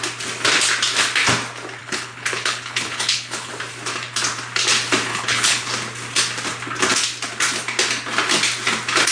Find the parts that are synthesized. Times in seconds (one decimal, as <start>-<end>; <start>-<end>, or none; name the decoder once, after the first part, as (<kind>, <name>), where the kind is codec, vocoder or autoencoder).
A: 1.8-3.5 (codec, HILCodec); 5.1-5.7